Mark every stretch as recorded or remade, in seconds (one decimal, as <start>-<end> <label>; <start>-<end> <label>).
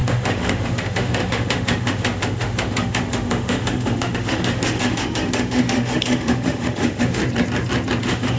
0.0-7.2 remade; 7.2-8.0 recorded; 8.0-8.4 remade